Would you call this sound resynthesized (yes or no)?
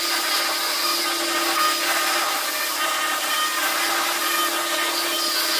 no